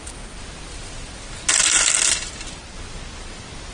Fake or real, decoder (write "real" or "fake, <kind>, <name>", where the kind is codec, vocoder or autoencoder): real